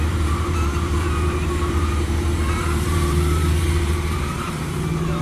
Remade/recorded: remade